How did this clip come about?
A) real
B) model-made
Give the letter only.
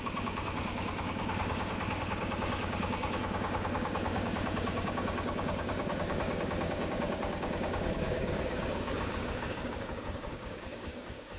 B